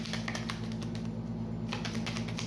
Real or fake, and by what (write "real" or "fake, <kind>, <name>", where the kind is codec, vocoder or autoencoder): real